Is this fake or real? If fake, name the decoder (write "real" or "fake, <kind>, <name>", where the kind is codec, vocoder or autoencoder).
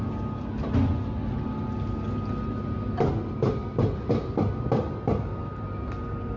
real